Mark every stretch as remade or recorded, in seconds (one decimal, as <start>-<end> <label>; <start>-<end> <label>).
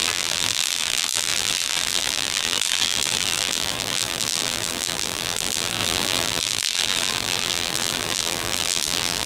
0.0-9.3 remade